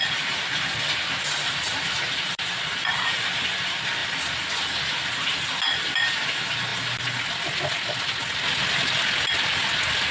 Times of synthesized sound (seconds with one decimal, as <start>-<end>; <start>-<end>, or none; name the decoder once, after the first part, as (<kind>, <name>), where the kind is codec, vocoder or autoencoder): 1.7-3.0 (vocoder, BigVGAN v2)